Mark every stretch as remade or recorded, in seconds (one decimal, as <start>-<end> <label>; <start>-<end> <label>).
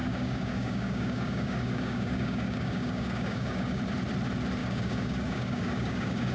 0.0-3.8 remade; 3.8-4.6 recorded; 4.6-6.3 remade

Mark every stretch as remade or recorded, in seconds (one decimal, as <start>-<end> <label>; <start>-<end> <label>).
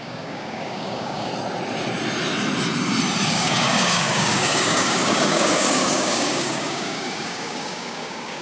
0.0-1.3 remade; 1.3-3.3 recorded; 3.3-8.4 remade